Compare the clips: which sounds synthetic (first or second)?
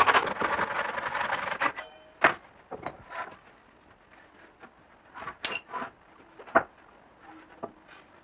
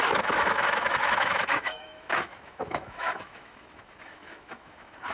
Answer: second